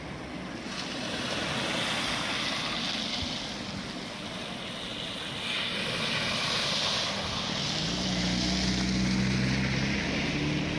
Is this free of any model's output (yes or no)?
yes